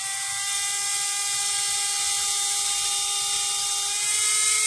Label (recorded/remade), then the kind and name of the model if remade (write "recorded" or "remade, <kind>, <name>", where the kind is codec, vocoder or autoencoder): recorded